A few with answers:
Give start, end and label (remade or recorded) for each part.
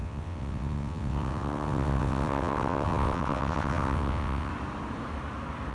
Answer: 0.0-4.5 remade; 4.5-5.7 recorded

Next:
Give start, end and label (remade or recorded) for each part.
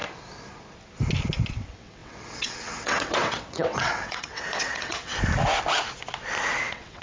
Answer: 0.0-1.5 recorded; 1.5-5.1 remade; 5.1-6.6 recorded; 6.6-7.0 remade